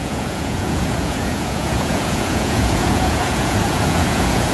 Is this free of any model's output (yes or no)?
no